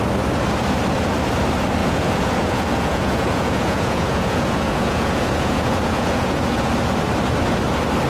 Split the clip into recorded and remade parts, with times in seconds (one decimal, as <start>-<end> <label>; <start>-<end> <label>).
0.0-1.8 recorded; 1.8-6.7 remade; 6.7-8.1 recorded